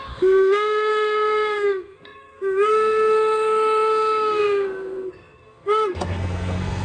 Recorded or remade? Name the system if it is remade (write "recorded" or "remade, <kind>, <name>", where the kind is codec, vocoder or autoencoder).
remade, codec, SNAC